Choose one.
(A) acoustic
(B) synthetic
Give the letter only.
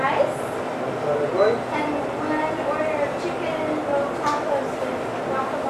A